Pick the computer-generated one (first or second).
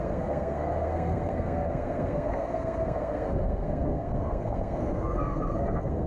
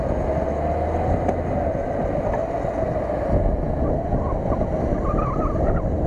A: first